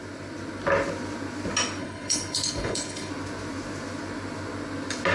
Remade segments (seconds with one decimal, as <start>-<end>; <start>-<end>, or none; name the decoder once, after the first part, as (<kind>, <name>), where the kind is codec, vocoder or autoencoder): 1.8-3.1 (codec, HILCodec)